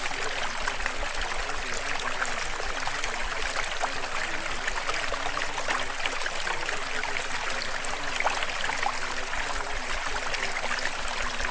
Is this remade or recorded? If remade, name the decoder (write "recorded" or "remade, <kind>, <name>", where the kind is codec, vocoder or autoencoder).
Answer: recorded